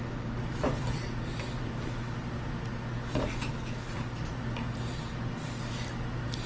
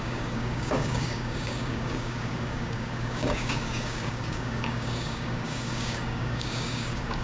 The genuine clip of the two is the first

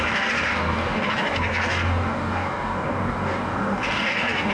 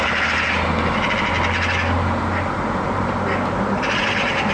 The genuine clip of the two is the second